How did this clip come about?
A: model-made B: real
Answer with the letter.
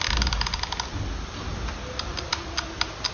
B